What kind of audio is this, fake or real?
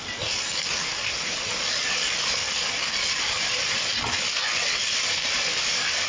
real